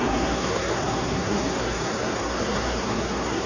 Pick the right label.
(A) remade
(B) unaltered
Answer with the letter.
A